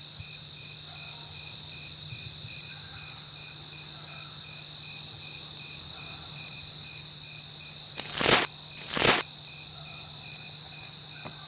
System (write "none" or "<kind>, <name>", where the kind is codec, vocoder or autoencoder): none